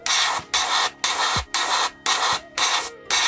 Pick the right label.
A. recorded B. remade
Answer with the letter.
A